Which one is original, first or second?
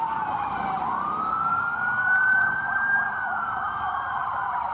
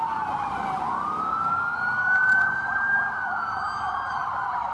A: second